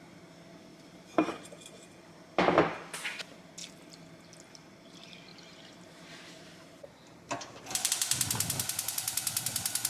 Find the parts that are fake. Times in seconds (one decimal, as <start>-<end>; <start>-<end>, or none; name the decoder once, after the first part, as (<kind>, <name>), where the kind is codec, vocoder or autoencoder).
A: 0.7-1.3 (vocoder, BigVGAN v2); 5.3-7.9